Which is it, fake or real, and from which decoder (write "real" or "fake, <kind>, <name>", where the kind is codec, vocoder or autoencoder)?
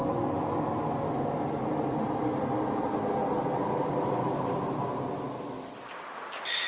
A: real